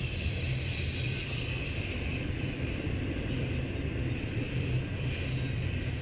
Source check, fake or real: fake